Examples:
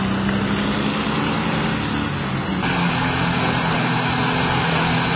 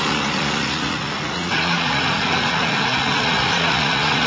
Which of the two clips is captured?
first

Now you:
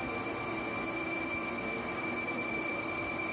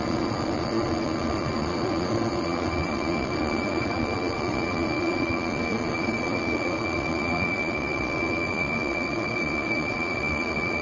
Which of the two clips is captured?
first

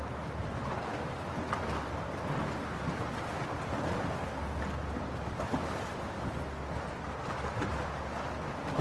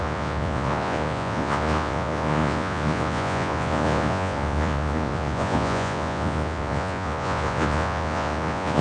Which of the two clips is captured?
first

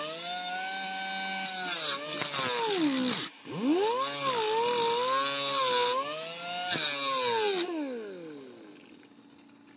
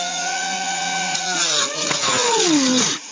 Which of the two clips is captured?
first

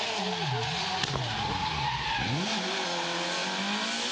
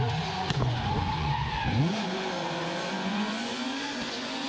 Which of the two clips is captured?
first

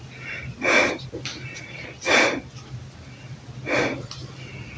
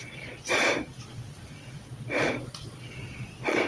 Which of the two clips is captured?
first